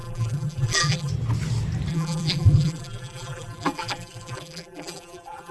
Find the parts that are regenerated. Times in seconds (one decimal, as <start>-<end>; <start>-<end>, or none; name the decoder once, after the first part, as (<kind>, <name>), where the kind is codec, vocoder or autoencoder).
0.0-1.1 (vocoder, BigVGAN v2); 1.9-5.5